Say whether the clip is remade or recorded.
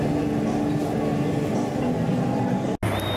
recorded